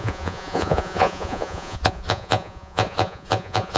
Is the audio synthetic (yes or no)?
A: yes